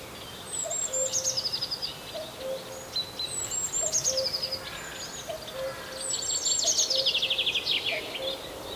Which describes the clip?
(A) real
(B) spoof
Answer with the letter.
A